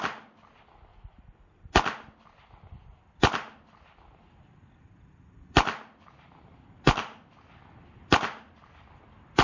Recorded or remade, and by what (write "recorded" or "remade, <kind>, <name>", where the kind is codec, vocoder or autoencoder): recorded